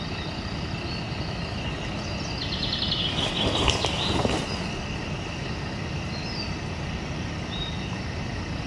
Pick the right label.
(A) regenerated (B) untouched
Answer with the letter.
B